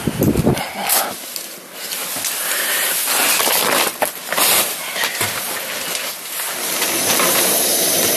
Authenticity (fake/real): fake